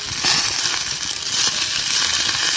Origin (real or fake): real